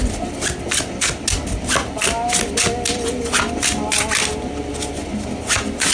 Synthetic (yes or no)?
no